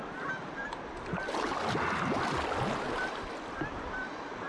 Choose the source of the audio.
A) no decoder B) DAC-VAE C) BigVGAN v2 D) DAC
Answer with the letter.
A